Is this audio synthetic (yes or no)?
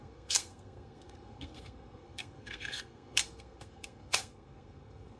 yes